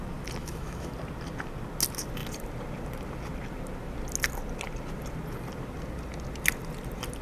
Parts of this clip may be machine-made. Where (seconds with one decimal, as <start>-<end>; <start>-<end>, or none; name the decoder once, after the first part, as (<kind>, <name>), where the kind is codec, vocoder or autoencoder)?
0.4-0.9 (autoencoder, DAC-VAE)